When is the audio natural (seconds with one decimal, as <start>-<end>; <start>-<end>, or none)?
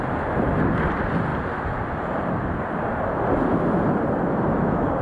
0.0-5.0